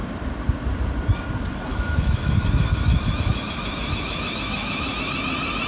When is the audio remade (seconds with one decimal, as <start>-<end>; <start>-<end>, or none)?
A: 1.7-5.1